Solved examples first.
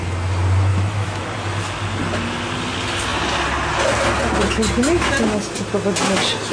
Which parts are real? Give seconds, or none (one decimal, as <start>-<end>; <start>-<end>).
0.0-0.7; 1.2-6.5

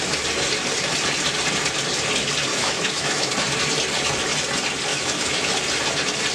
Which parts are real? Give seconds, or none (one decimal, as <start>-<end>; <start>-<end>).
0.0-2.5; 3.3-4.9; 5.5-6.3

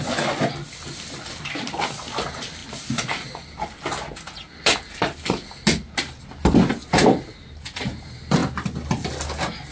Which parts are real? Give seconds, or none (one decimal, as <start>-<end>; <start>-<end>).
0.0-9.7